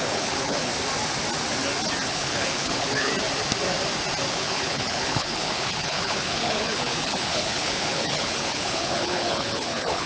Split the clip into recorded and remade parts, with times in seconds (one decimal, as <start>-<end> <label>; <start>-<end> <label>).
0.0-0.7 remade; 0.7-2.1 recorded; 2.1-3.1 remade; 3.1-4.3 recorded; 4.3-10.1 remade